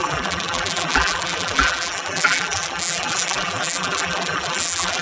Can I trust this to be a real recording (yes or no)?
no